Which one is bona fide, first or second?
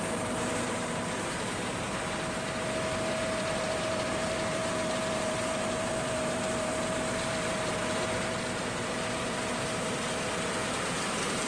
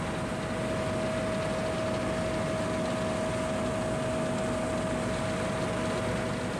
second